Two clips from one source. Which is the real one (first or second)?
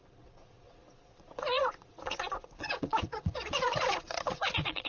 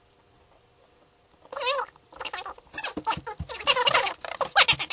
second